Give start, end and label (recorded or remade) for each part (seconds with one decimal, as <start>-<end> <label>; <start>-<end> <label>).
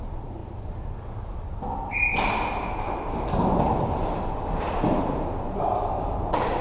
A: 0.0-5.0 recorded; 5.0-5.6 remade; 5.6-6.6 recorded